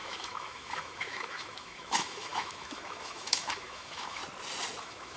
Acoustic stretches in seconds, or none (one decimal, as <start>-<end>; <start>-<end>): 4.2-4.8